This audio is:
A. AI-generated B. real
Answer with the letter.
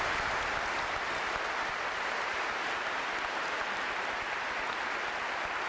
B